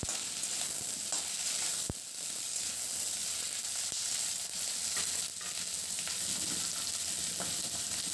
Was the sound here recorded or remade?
recorded